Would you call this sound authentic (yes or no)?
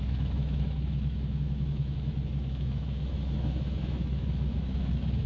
no